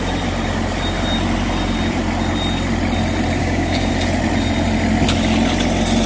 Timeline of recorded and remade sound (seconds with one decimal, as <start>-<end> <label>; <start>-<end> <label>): 0.0-3.4 recorded; 3.4-3.9 remade; 3.9-6.1 recorded